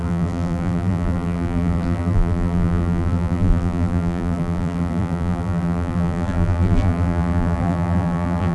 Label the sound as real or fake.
fake